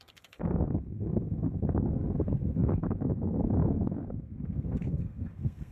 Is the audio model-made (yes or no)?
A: yes